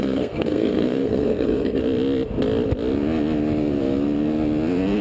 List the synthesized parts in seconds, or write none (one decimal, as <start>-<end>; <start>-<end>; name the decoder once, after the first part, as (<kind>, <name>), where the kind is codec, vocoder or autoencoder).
0.0-1.8 (codec, SNAC)